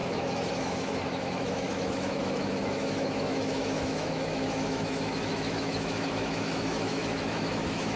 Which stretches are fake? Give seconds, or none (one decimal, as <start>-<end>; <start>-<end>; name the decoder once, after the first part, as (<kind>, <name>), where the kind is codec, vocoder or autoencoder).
0.0-8.0 (autoencoder, DAC-VAE)